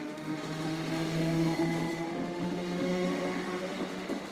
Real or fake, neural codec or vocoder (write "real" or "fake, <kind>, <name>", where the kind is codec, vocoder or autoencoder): fake, autoencoder, DAC-VAE